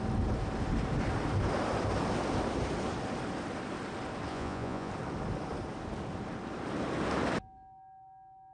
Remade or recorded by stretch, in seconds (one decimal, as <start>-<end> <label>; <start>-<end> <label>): 0.0-4.3 recorded; 4.3-4.9 remade; 4.9-8.5 recorded